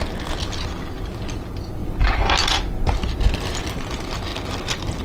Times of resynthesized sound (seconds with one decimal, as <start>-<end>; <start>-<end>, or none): none